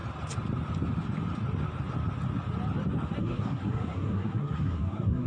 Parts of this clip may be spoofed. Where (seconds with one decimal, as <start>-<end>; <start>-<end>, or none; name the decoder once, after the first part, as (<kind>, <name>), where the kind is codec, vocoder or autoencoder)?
3.2-5.3 (codec, SNAC)

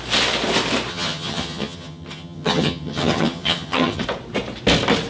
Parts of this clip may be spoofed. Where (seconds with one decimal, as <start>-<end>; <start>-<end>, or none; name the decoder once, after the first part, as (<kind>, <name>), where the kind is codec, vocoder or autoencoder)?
0.9-4.0 (vocoder, HiFi-GAN)